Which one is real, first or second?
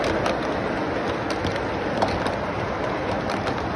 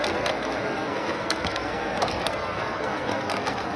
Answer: first